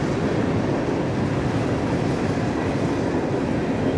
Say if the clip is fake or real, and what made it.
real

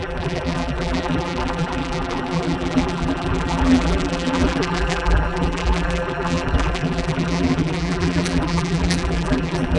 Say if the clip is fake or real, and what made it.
fake, vocoder, BigVGAN v2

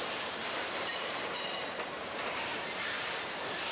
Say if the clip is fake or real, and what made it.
fake, vocoder, BigVGAN v2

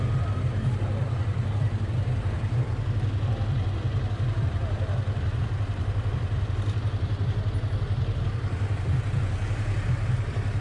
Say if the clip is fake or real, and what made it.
fake, vocoder, BigVGAN v2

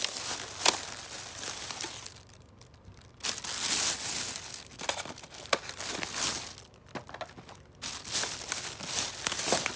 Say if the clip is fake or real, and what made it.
real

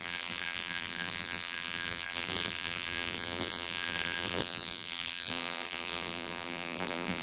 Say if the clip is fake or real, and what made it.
fake, vocoder, BigVGAN v2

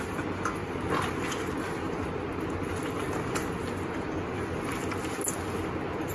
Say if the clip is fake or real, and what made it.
real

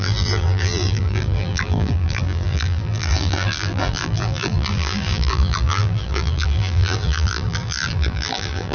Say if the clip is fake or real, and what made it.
fake, vocoder, BigVGAN v2